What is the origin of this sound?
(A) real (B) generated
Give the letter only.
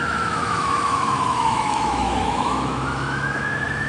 B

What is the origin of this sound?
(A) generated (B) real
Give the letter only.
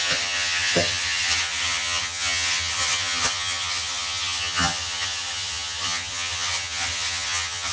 A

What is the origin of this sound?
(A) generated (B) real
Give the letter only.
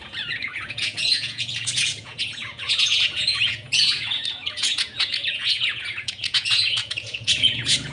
A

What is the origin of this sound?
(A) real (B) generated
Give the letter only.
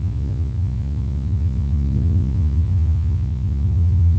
B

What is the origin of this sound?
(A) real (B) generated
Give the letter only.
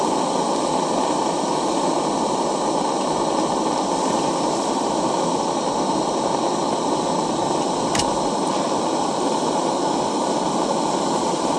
A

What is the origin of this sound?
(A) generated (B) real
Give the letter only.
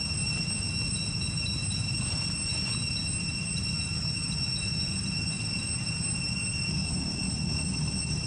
B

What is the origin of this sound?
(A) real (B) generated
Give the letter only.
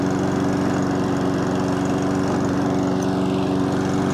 A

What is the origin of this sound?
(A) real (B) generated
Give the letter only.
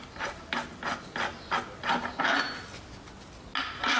A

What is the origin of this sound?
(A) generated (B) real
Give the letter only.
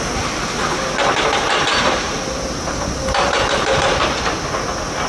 B